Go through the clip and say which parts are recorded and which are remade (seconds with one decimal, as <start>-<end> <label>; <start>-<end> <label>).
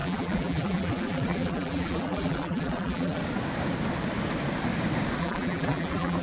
0.0-3.2 remade; 3.2-5.2 recorded; 5.2-6.2 remade